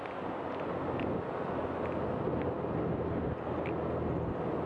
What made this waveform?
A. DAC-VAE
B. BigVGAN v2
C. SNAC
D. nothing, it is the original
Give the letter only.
D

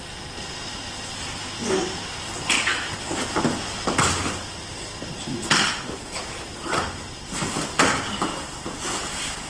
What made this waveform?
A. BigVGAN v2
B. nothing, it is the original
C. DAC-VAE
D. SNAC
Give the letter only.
B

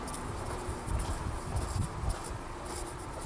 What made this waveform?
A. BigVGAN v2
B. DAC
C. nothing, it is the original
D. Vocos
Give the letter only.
A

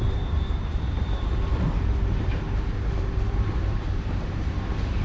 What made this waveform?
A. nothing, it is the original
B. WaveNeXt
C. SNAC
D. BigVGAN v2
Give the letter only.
D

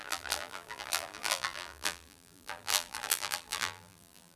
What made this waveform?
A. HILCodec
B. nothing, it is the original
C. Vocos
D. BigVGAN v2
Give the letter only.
D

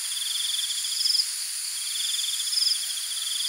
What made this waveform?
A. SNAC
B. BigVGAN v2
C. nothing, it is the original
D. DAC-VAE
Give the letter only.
C